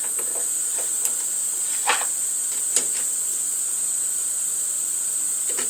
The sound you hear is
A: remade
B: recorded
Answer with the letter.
B